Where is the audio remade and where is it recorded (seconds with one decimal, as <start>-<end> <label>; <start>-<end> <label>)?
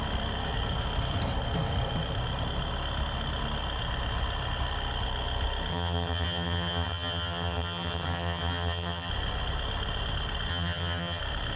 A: 0.0-5.7 recorded; 5.7-9.1 remade; 9.1-10.5 recorded; 10.5-11.2 remade; 11.2-11.6 recorded